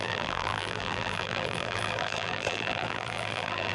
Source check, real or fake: fake